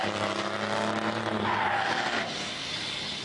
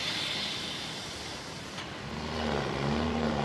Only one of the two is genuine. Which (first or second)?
first